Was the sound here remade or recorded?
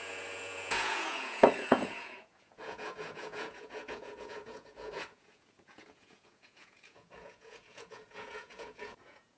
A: remade